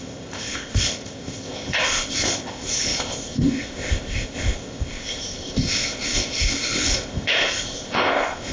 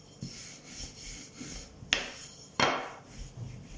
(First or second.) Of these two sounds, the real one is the second